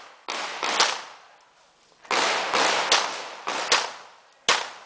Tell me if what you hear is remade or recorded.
recorded